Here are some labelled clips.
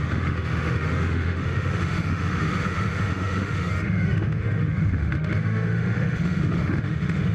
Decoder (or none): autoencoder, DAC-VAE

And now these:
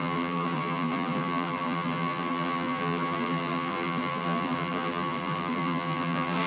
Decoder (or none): vocoder, BigVGAN v2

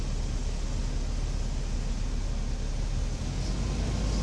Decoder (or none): none